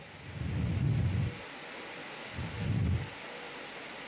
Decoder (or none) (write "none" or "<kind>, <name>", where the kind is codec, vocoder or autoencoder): none